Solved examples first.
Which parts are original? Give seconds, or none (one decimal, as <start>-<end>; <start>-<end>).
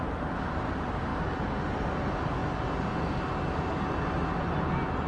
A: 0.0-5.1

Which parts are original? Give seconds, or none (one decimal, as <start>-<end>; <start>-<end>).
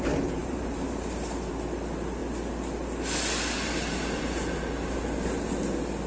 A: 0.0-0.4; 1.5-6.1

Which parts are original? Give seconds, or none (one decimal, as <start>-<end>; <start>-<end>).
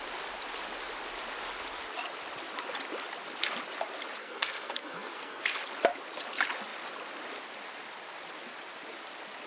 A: 0.0-4.2; 5.4-9.5